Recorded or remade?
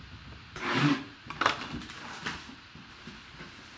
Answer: remade